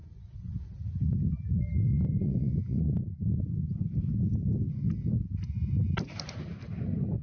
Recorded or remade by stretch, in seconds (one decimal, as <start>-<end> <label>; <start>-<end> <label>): 0.0-0.7 remade; 0.7-1.9 recorded; 1.9-3.0 remade; 3.0-7.2 recorded